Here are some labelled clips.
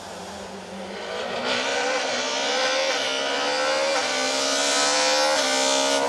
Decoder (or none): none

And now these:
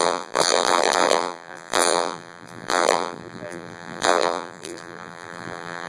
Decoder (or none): vocoder, BigVGAN v2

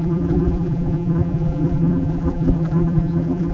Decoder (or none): vocoder, BigVGAN v2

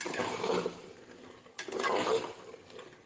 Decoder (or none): none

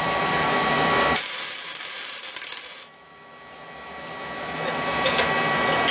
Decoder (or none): none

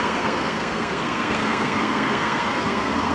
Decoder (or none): codec, SNAC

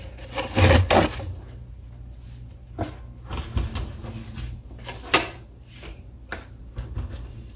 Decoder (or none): none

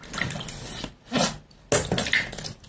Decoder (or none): none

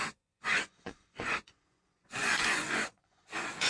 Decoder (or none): vocoder, Vocos